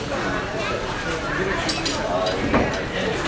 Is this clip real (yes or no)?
yes